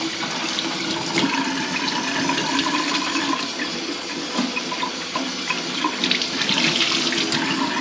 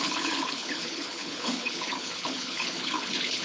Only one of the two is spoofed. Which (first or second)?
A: second